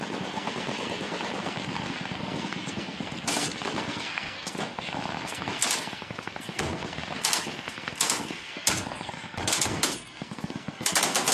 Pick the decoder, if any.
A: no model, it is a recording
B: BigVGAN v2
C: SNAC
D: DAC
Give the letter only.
C